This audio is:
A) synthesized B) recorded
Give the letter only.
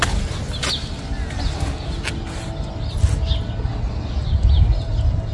B